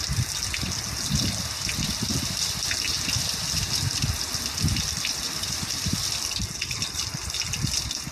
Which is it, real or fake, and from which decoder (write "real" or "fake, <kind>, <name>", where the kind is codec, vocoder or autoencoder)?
real